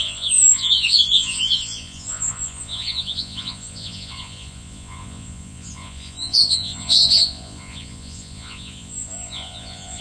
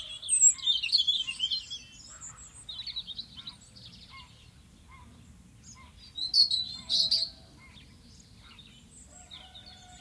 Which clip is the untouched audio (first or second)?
second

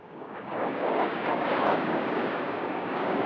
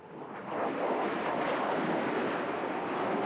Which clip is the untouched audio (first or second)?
second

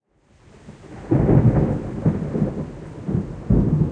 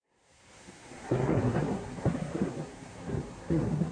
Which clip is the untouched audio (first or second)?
first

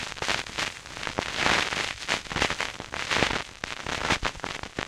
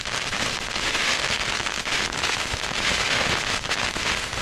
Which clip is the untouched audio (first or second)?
first